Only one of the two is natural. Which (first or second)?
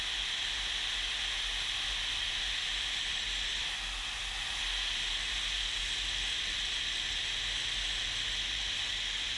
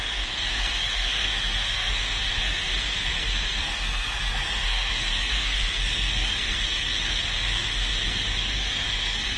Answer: first